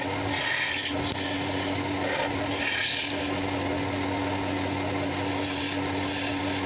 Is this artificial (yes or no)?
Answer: no